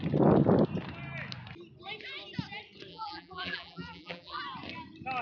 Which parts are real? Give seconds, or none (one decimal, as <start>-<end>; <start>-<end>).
0.0-2.9; 4.4-5.2